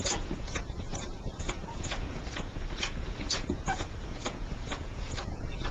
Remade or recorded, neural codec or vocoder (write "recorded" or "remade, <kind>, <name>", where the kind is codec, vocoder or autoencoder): remade, vocoder, Vocos